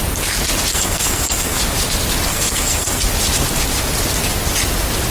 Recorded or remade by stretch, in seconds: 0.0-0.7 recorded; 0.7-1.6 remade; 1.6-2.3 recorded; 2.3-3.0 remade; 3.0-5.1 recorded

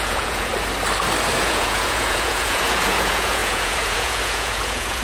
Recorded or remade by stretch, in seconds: 0.0-0.5 remade; 0.5-1.4 recorded; 1.4-5.0 remade

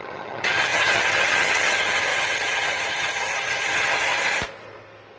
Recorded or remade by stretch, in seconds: 0.0-4.1 remade; 4.1-5.2 recorded